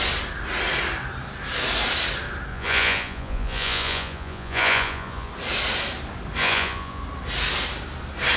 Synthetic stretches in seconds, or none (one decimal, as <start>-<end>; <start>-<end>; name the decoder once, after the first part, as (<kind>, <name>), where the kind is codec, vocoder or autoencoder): 2.5-5.3 (vocoder, Vocos); 6.4-7.0